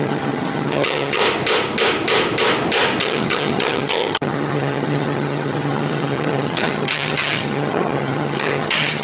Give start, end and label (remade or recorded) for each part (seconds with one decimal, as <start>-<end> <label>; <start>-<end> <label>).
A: 0.0-1.2 remade; 1.2-3.0 recorded; 3.0-9.0 remade